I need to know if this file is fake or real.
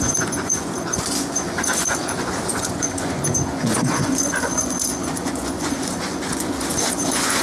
fake